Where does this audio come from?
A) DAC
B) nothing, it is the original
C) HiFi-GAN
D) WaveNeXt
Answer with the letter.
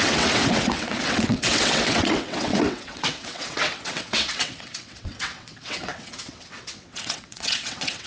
D